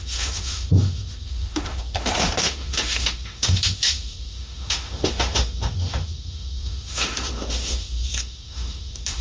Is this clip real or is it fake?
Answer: fake